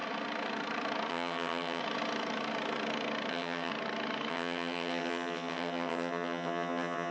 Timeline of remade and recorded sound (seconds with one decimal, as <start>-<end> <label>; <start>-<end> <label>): 0.0-1.1 recorded; 1.1-1.8 remade; 1.8-3.3 recorded; 3.3-3.7 remade; 3.7-4.3 recorded; 4.3-7.1 remade